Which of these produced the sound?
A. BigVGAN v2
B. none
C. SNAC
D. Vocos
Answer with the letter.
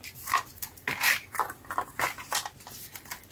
B